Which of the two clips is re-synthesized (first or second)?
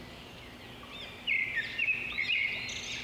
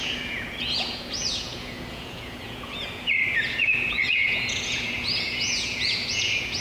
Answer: second